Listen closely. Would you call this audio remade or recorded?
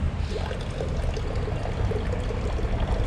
recorded